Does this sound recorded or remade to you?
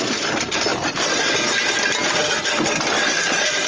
recorded